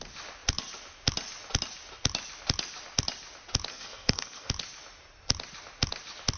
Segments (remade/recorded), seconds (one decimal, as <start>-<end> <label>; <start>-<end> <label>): 0.0-3.7 recorded; 3.7-4.5 remade; 4.5-6.4 recorded